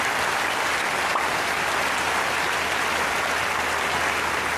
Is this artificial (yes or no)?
no